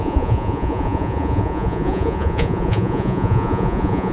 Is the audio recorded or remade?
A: remade